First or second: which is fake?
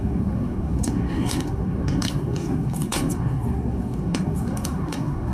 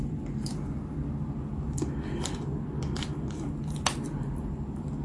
first